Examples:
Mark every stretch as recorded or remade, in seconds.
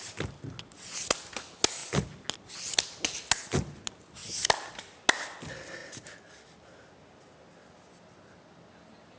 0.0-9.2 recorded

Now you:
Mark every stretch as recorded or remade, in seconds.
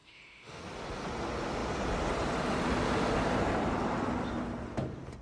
0.0-0.6 remade; 0.6-5.2 recorded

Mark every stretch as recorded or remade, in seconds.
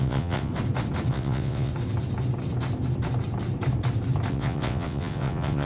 0.0-0.5 remade; 0.5-1.1 recorded; 1.1-1.7 remade; 1.7-4.3 recorded; 4.3-5.6 remade